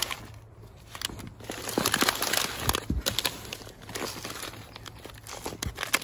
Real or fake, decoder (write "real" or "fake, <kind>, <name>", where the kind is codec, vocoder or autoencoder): real